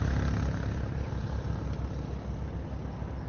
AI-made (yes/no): no